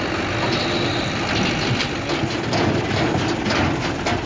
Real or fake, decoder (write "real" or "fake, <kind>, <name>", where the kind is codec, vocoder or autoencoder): real